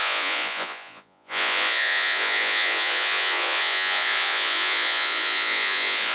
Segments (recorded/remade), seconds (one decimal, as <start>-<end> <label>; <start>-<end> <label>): 0.0-6.1 remade